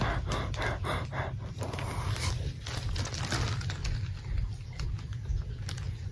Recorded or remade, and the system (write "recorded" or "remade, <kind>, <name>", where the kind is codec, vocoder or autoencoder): recorded